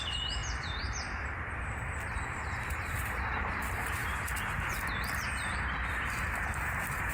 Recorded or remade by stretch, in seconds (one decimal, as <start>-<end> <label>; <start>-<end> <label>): 0.0-4.0 remade; 4.0-7.1 recorded